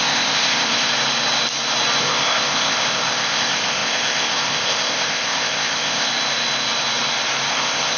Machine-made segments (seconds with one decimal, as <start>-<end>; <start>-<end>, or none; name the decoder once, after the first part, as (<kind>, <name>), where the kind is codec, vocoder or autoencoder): 0.0-0.9 (codec, ZipCodec); 2.0-6.1; 7.5-8.0